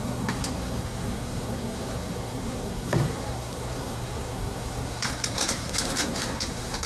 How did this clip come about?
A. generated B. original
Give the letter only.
A